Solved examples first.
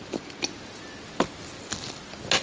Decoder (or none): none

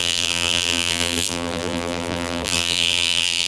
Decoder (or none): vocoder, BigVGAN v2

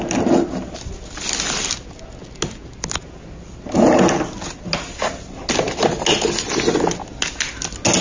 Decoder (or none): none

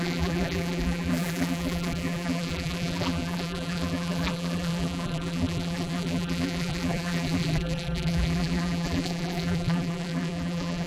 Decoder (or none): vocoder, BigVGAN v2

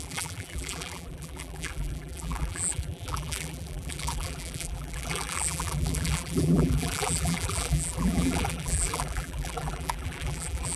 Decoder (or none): vocoder, BigVGAN v2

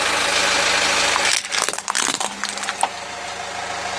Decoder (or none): none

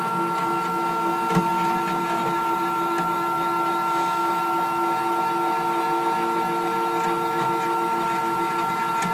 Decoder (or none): none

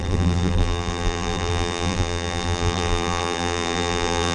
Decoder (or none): vocoder, BigVGAN v2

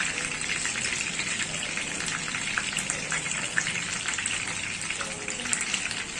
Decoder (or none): none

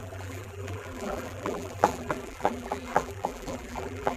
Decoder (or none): vocoder, BigVGAN v2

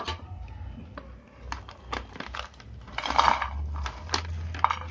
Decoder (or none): none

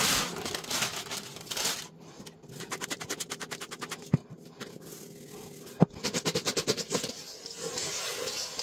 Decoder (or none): none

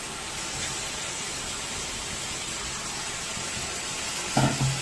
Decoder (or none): none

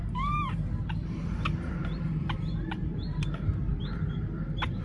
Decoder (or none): vocoder, BigVGAN v2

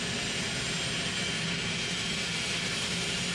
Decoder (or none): none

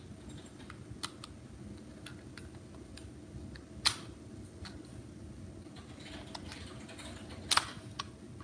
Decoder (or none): none